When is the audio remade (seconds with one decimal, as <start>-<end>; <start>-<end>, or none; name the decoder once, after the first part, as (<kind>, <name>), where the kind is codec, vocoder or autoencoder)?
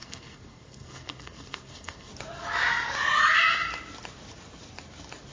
0.0-2.1 (codec, SNAC)